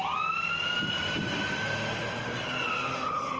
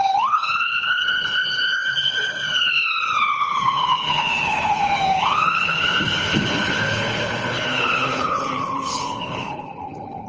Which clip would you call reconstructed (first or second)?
second